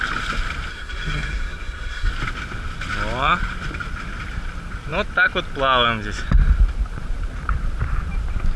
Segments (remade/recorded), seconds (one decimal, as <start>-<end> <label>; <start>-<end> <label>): 0.0-0.7 recorded; 0.7-2.1 remade; 2.1-8.6 recorded